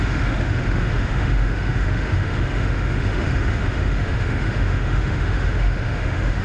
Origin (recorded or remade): remade